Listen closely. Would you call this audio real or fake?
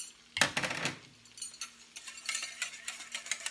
real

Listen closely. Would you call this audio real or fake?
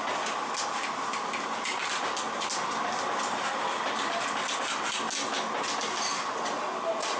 real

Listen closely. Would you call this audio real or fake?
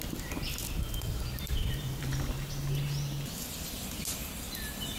real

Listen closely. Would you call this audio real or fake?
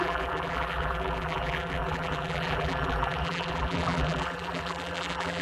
fake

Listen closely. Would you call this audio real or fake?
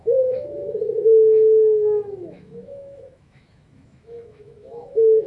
fake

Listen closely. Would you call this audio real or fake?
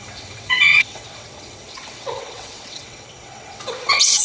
fake